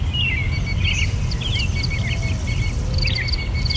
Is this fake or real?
real